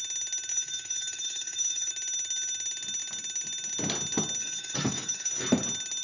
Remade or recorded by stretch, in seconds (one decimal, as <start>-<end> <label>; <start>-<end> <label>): 0.0-0.5 recorded; 0.5-1.9 remade; 1.9-4.4 recorded; 4.4-5.4 remade; 5.4-6.0 recorded